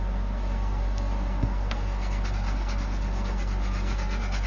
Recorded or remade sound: remade